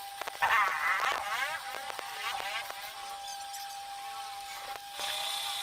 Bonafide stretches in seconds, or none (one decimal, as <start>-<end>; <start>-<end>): 0.0-0.7; 2.6-5.6